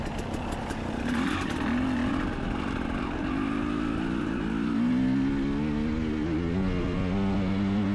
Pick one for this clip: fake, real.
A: real